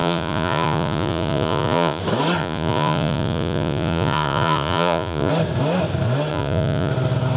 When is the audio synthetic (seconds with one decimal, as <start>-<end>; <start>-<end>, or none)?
0.0-2.0; 2.4-5.3; 6.3-6.9